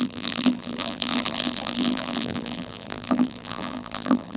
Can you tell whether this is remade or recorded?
remade